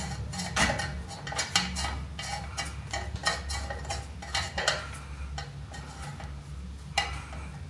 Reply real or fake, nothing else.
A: real